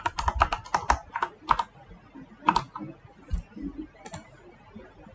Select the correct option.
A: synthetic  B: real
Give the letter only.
B